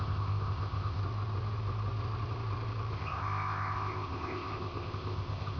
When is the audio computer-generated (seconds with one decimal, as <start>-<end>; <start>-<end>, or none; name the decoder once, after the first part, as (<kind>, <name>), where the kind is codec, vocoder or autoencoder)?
0.0-1.0 (codec, ZipCodec); 2.9-5.6